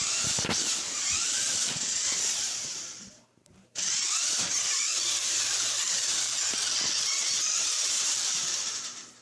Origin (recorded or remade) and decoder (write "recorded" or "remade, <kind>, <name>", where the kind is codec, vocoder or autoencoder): remade, vocoder, BigVGAN v2